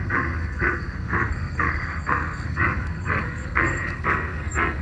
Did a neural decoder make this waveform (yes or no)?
yes